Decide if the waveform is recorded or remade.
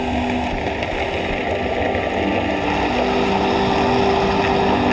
recorded